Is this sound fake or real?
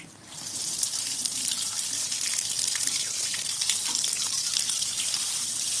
fake